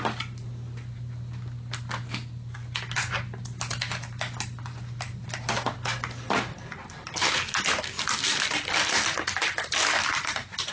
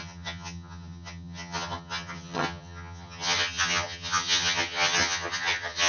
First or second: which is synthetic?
second